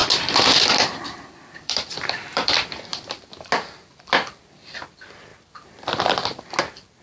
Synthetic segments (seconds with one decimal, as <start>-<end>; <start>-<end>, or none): 0.8-2.9; 4.3-5.3; 6.6-7.0